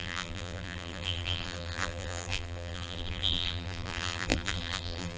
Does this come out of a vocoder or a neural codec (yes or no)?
yes